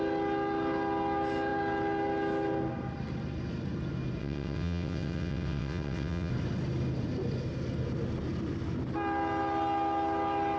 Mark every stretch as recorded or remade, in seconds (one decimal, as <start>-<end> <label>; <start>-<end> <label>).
0.0-4.2 recorded; 4.2-6.3 remade; 6.3-10.6 recorded